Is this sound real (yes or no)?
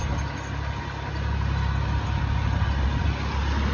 yes